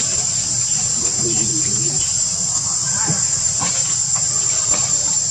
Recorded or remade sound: remade